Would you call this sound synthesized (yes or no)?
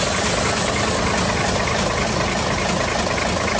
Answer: no